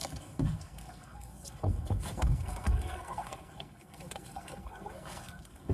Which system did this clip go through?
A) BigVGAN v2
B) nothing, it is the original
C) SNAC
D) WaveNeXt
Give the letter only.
C